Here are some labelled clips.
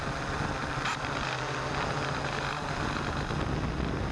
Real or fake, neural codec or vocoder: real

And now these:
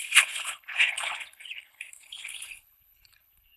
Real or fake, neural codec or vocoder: fake, codec, HILCodec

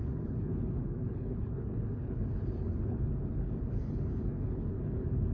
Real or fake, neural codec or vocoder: fake, codec, HILCodec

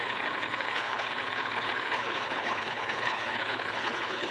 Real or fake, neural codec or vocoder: fake, codec, HILCodec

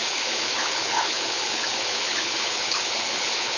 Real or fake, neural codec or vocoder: fake, codec, HILCodec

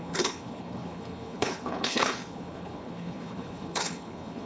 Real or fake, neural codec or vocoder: fake, codec, HILCodec